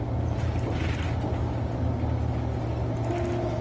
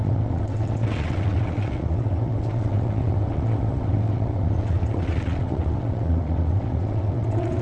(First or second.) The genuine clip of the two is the first